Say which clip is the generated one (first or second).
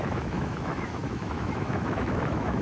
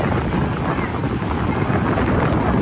first